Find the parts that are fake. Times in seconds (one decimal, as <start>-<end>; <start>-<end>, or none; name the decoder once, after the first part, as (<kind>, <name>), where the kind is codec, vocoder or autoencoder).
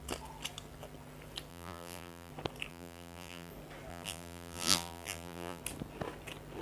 1.5-2.3 (vocoder, BigVGAN v2); 2.7-3.5; 3.9-5.6